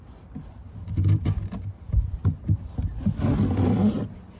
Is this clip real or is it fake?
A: real